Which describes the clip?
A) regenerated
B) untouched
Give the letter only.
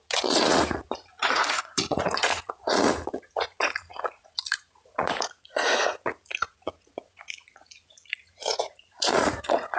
A